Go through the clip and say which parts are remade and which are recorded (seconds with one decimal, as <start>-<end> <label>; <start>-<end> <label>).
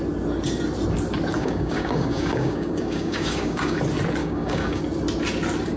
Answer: 0.0-1.4 recorded; 1.4-3.8 remade; 3.8-4.2 recorded; 4.2-4.8 remade; 4.8-5.8 recorded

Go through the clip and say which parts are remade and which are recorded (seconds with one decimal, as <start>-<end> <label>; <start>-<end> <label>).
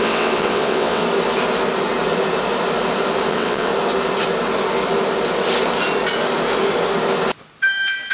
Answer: 0.0-1.0 remade; 1.0-3.3 recorded; 3.3-3.7 remade; 3.7-8.1 recorded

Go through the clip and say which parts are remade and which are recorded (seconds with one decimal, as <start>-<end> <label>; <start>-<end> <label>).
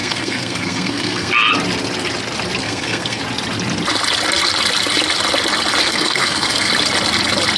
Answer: 0.0-1.3 remade; 1.3-2.6 recorded; 2.6-3.2 remade; 3.2-5.8 recorded; 5.8-6.7 remade; 6.7-7.6 recorded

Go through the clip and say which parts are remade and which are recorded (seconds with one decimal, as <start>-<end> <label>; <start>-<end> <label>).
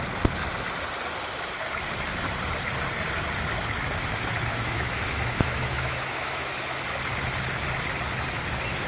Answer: 0.0-4.5 recorded; 4.5-6.8 remade; 6.8-8.9 recorded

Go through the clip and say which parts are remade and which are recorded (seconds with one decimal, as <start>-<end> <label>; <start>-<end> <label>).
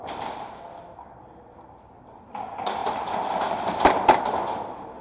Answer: 0.0-5.0 recorded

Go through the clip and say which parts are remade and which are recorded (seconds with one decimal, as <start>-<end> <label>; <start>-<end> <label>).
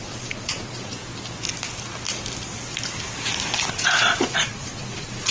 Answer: 0.0-1.0 remade; 1.0-3.7 recorded; 3.7-5.3 remade